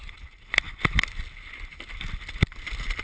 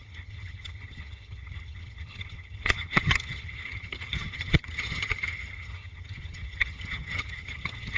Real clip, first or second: first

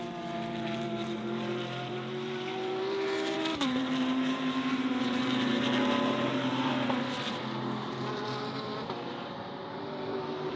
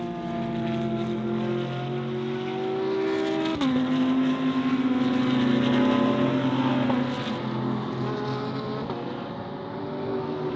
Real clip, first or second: second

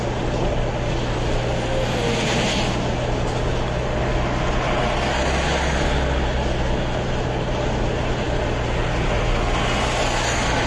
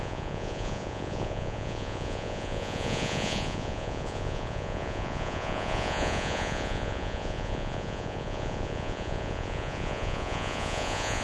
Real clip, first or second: first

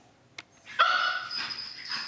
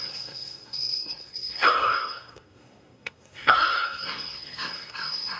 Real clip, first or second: first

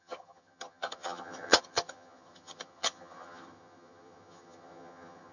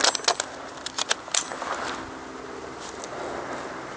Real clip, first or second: second